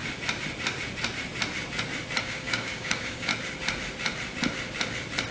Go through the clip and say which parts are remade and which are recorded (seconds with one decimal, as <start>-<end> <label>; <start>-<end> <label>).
0.0-2.2 recorded; 2.2-3.3 remade; 3.3-5.3 recorded